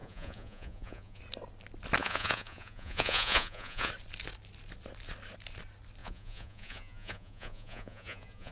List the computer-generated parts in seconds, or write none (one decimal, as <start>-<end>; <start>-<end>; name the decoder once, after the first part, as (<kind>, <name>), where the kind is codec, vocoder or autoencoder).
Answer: 0.0-1.2 (vocoder, Vocos); 2.0-3.9; 6.0-8.5